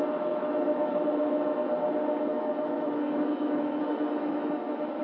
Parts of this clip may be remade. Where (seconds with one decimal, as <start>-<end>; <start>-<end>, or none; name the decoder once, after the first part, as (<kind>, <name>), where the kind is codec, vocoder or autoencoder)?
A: 0.4-1.0 (autoencoder, DAC-VAE); 2.3-5.0